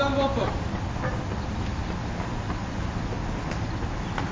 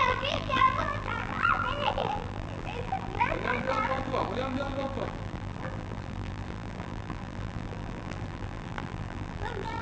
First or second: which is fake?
second